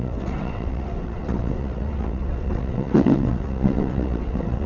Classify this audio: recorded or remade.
remade